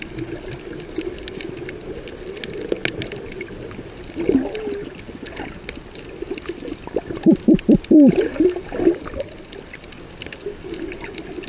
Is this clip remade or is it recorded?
recorded